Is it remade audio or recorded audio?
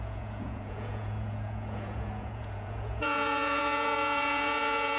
remade